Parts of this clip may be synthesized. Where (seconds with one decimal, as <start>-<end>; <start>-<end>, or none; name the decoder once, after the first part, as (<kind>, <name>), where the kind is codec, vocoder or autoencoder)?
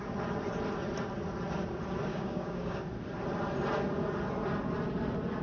2.1-2.8 (codec, DAC)